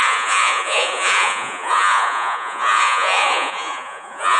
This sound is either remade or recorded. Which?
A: remade